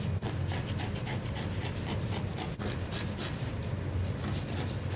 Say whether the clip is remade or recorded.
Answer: recorded